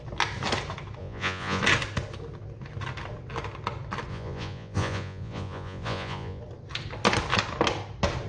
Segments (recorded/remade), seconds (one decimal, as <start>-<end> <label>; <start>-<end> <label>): 0.0-1.0 recorded; 1.0-1.6 remade; 1.6-4.1 recorded; 4.1-6.4 remade; 6.4-8.3 recorded